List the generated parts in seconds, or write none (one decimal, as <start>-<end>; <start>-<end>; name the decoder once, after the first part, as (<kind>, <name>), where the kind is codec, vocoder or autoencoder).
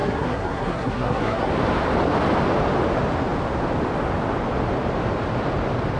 0.0-1.5 (codec, SNAC)